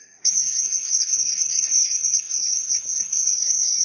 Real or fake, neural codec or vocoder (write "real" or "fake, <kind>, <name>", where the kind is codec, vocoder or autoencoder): fake, codec, SNAC